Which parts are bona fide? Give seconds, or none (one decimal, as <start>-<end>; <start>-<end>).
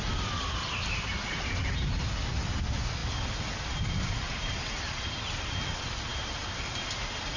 0.0-7.4